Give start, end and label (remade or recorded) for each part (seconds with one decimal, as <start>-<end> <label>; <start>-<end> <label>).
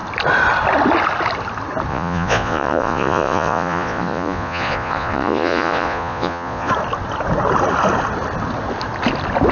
0.0-1.9 recorded; 1.9-6.7 remade; 6.7-9.5 recorded